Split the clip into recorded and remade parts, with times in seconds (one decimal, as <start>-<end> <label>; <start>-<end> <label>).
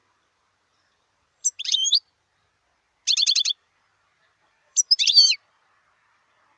0.0-2.5 remade; 2.5-3.2 recorded; 3.2-5.7 remade; 5.7-6.6 recorded